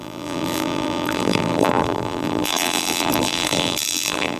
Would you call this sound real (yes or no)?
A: no